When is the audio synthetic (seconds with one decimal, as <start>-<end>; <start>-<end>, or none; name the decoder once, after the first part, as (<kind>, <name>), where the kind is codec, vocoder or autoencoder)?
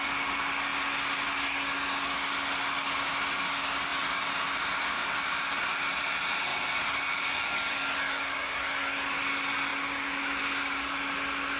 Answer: none